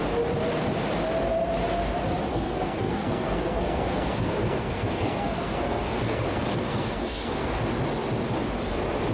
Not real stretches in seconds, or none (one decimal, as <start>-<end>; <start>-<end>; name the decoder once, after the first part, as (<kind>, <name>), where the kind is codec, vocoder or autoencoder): 2.3-7.6 (codec, SNAC)